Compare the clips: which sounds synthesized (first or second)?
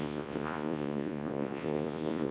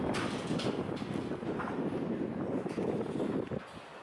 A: first